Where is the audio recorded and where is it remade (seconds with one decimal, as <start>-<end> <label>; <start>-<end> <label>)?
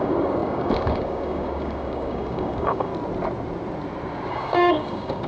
0.0-2.9 remade; 2.9-4.3 recorded; 4.3-5.3 remade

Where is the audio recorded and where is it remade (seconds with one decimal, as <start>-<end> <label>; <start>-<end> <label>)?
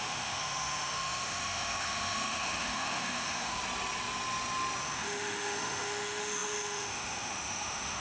0.0-3.6 remade; 3.6-4.8 recorded; 4.8-8.0 remade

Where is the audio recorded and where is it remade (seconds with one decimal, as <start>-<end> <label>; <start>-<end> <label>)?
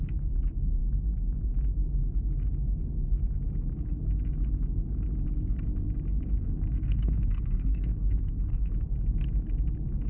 0.0-6.1 recorded; 6.1-8.7 remade; 8.7-10.1 recorded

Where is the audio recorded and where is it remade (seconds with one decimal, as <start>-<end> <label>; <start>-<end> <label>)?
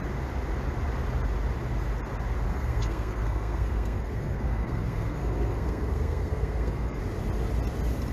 0.0-2.5 recorded; 2.5-7.0 remade; 7.0-8.1 recorded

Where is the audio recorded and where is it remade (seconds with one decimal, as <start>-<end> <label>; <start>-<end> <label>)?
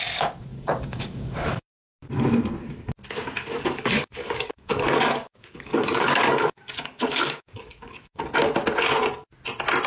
0.0-0.5 recorded; 0.5-2.1 remade; 2.1-3.5 recorded; 3.5-8.2 remade; 8.2-9.9 recorded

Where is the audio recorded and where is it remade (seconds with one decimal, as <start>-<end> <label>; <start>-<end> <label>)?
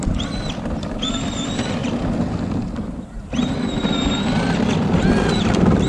0.0-1.8 remade; 1.8-5.3 recorded; 5.3-5.9 remade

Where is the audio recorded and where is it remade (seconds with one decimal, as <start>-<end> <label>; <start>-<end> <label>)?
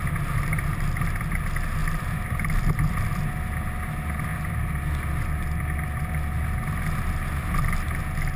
0.0-1.8 recorded; 1.8-3.3 remade; 3.3-8.4 recorded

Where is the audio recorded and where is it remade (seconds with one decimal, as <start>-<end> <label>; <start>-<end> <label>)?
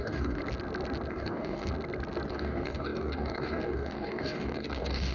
0.0-0.4 remade; 0.4-1.1 recorded; 1.1-1.7 remade; 1.7-2.3 recorded; 2.3-5.1 remade